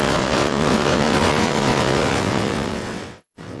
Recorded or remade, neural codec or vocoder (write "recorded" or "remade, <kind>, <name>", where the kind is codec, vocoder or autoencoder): remade, vocoder, WaveNeXt